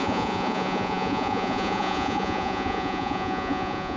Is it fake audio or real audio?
fake